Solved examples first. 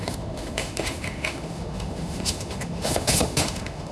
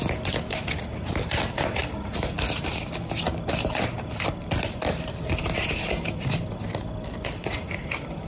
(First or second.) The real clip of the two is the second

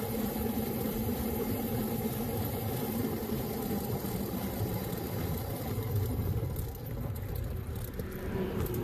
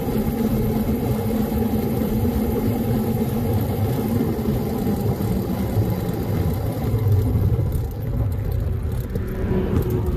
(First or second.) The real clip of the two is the second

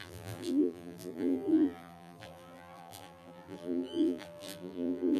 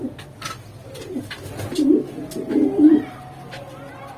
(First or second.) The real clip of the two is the second